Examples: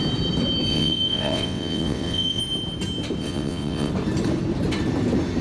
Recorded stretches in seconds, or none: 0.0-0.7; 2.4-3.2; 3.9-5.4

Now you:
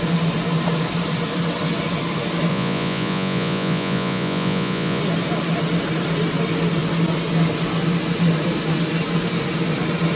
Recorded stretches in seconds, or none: 0.0-2.5; 5.0-10.2

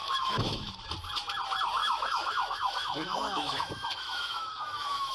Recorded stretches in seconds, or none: 0.7-1.8

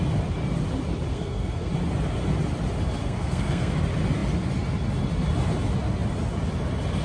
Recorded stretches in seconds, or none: 0.0-1.1; 1.7-3.0; 3.7-7.0

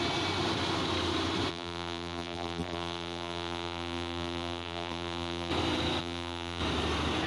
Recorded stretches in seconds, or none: 0.0-1.5; 5.5-6.0; 6.6-7.3

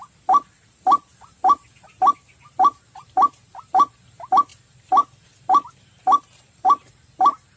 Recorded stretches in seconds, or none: 0.0-7.6

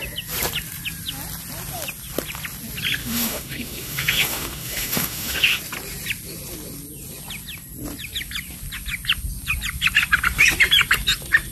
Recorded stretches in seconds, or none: 0.0-3.0; 5.6-11.5

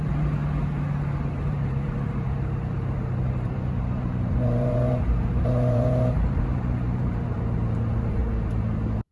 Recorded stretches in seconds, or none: 0.4-1.3; 8.2-9.1